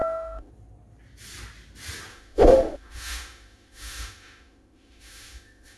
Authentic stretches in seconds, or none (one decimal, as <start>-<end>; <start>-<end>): 0.5-2.1